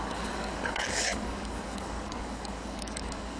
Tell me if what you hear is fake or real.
fake